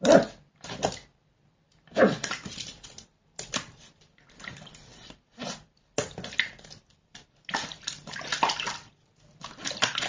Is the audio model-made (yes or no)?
yes